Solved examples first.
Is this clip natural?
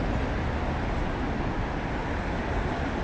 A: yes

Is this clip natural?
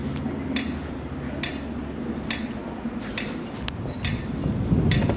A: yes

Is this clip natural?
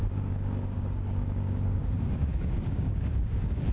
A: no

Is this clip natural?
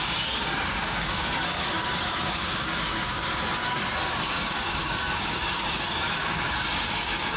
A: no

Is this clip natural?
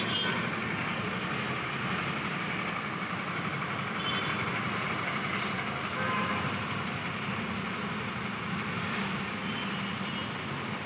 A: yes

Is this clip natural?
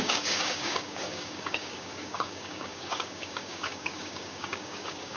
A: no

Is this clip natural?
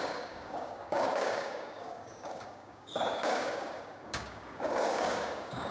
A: no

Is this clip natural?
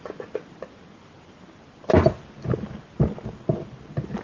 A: yes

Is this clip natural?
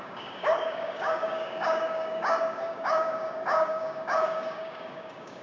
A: no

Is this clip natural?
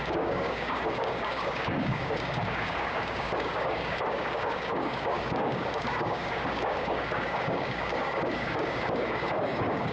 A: no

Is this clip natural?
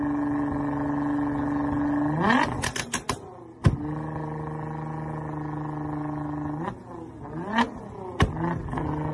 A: yes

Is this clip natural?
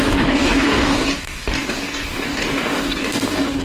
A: no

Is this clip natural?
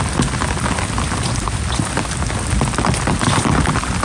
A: yes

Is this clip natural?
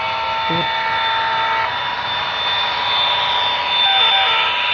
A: yes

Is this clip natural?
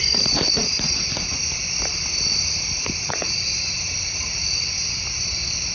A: yes